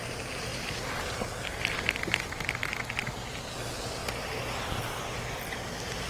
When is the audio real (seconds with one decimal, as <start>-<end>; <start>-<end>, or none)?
0.0-0.5; 2.4-4.0; 4.9-6.1